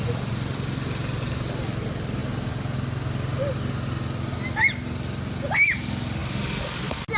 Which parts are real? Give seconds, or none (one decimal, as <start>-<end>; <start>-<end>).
0.0-7.2